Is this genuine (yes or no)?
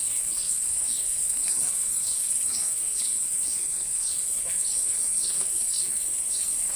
no